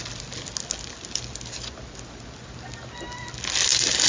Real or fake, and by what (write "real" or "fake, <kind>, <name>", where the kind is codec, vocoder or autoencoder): real